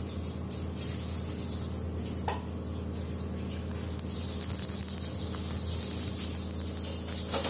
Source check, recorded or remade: recorded